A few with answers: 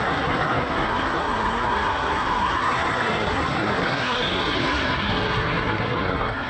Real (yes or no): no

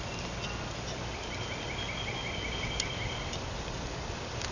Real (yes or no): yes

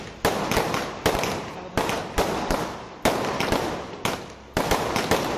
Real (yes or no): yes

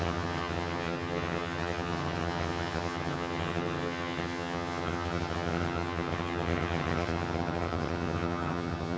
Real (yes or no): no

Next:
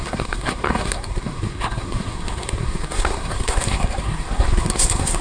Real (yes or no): no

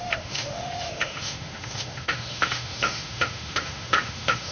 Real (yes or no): no